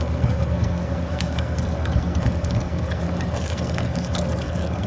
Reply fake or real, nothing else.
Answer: fake